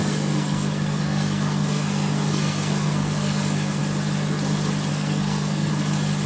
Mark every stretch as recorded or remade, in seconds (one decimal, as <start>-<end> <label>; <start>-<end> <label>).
0.0-3.8 remade; 3.8-4.9 recorded; 4.9-5.7 remade; 5.7-6.3 recorded